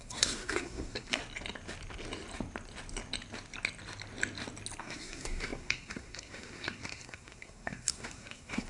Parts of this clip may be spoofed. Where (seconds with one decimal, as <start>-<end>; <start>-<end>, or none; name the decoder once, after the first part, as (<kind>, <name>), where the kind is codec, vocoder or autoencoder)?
0.0-1.2 (codec, SNAC); 4.8-8.7